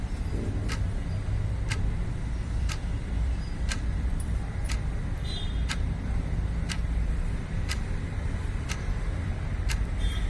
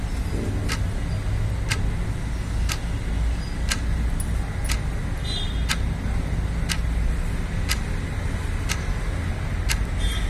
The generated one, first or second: first